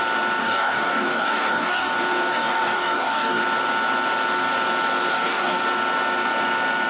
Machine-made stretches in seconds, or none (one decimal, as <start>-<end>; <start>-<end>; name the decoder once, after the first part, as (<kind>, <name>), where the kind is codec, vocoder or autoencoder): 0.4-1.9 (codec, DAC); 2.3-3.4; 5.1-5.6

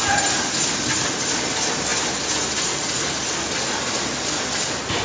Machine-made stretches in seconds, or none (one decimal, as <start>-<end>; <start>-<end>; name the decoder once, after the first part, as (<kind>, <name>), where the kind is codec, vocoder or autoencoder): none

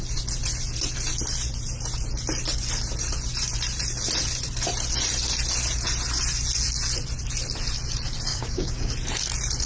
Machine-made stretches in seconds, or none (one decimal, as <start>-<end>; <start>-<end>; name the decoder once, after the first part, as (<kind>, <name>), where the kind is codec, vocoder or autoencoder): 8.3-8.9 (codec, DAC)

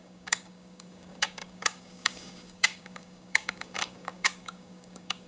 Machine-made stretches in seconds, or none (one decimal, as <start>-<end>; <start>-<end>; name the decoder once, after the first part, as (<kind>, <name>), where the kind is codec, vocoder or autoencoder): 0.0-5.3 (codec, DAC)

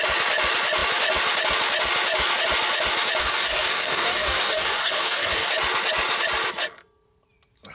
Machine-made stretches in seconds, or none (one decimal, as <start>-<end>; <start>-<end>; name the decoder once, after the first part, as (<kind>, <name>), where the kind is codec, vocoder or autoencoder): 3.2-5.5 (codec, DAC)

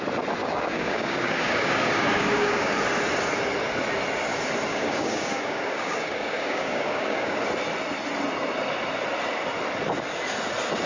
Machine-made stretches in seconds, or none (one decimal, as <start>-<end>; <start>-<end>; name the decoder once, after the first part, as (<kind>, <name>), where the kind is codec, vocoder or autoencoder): 0.4-2.7 (codec, DAC); 4.7-7.4